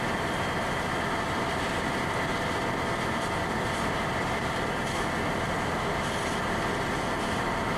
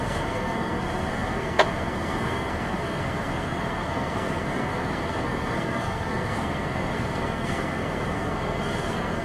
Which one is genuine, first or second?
first